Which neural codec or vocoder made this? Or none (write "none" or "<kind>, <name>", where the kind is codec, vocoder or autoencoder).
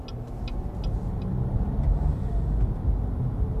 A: none